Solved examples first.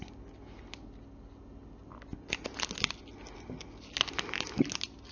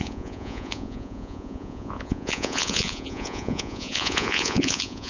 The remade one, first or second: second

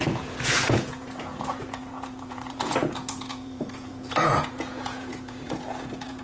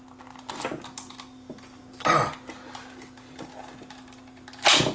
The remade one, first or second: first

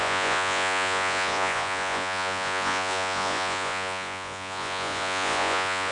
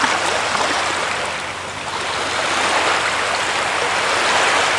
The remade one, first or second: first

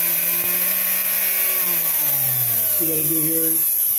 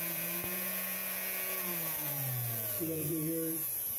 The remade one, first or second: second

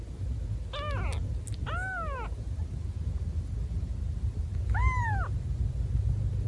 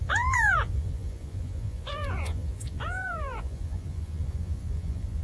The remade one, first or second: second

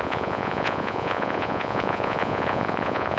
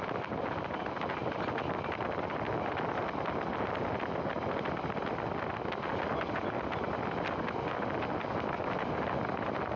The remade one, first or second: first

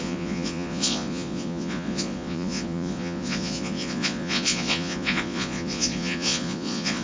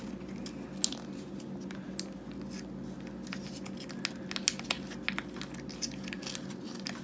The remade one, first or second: first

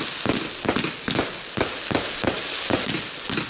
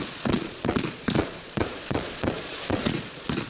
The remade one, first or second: second